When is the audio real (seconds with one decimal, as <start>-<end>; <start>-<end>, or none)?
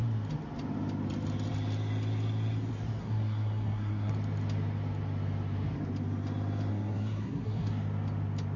0.0-3.0; 4.1-6.7; 7.7-8.6